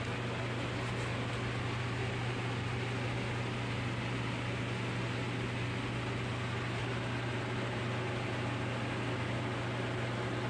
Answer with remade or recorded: recorded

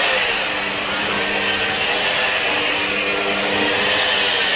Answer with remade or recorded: recorded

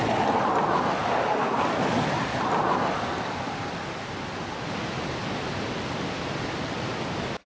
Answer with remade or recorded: recorded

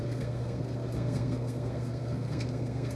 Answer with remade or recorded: remade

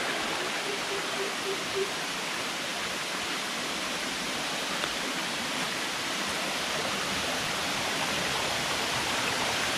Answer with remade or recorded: recorded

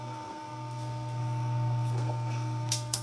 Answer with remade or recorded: remade